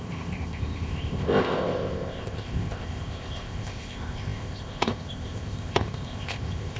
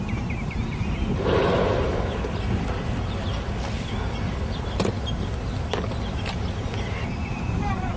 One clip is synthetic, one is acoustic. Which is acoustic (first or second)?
second